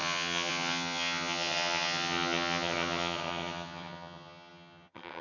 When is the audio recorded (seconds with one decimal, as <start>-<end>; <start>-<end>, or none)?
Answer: none